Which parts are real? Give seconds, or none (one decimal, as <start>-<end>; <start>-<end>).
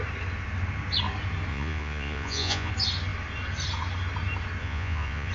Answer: 0.0-1.5; 2.7-4.6